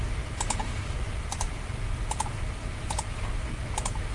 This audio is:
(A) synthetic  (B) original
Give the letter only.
A